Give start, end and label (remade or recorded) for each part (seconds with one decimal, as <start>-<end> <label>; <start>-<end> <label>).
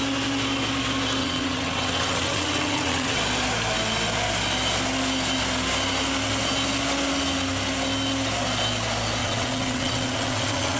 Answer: 0.0-1.2 recorded; 1.2-3.2 remade; 3.2-9.2 recorded; 9.2-10.8 remade